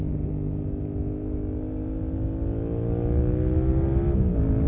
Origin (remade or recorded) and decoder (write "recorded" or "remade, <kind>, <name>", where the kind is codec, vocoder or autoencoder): recorded